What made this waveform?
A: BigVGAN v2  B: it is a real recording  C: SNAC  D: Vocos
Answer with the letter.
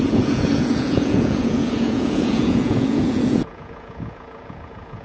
D